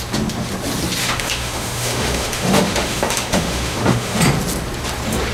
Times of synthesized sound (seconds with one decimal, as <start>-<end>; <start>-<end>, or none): 1.0-4.2